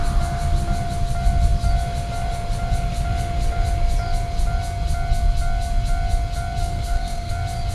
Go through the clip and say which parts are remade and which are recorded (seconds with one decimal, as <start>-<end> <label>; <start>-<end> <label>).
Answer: 0.0-6.6 recorded; 6.6-7.3 remade; 7.3-7.7 recorded